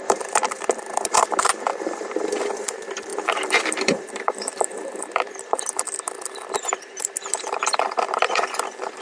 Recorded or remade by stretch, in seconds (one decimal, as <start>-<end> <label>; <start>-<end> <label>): 0.0-1.7 remade; 1.7-2.6 recorded; 2.6-9.0 remade